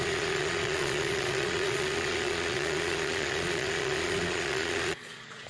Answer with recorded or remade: remade